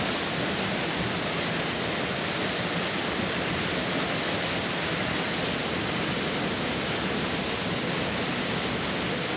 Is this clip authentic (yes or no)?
yes